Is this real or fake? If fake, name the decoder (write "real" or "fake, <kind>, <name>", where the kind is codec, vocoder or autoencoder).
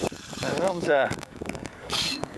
fake, codec, DAC